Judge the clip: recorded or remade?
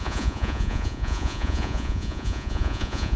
remade